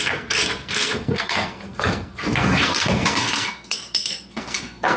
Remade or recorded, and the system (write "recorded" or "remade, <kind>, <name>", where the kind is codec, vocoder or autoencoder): remade, codec, SNAC